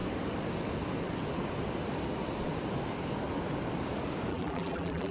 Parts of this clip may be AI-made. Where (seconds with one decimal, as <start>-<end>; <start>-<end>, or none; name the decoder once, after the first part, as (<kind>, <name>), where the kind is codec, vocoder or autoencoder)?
4.3-5.1 (vocoder, BigVGAN v2)